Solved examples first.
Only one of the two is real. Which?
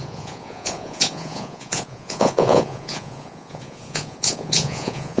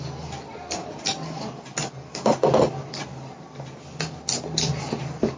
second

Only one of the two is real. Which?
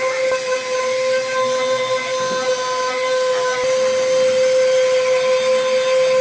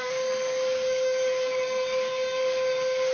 first